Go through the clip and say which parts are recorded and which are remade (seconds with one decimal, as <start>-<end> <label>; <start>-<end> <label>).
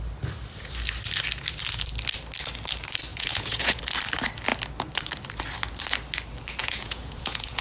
0.0-3.1 recorded; 3.1-3.8 remade; 3.8-6.6 recorded; 6.6-7.6 remade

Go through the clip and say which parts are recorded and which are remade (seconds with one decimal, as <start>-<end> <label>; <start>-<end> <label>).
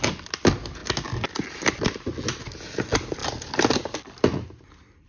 0.0-3.2 recorded; 3.2-3.7 remade; 3.7-5.1 recorded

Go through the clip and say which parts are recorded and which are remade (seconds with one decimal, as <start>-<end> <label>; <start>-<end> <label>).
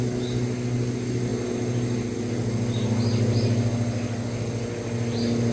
0.0-5.5 recorded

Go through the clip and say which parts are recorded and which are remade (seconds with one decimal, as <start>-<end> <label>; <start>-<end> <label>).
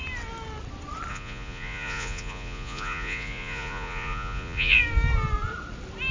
0.0-1.1 recorded; 1.1-4.8 remade; 4.8-6.1 recorded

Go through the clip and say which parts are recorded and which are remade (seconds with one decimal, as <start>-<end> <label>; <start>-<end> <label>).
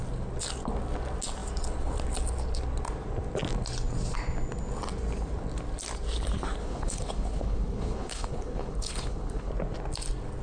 0.0-6.6 recorded; 6.6-9.5 remade; 9.5-10.4 recorded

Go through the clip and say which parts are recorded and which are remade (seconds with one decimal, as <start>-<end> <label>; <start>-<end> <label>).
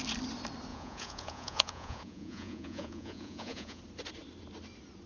0.0-0.7 recorded; 0.7-3.8 remade; 3.8-5.1 recorded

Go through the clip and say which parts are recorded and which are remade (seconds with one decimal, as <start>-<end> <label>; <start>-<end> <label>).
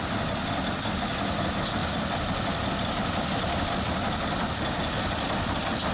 0.0-1.8 recorded; 1.8-2.7 remade; 2.7-5.9 recorded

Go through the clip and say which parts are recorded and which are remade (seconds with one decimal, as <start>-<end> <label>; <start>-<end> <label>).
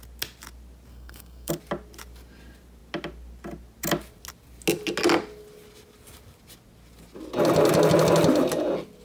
0.0-0.9 recorded; 0.9-1.5 remade; 1.5-9.0 recorded